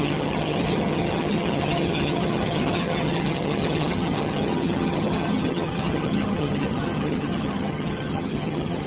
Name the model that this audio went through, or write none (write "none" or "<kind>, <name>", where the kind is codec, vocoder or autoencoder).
vocoder, HiFi-GAN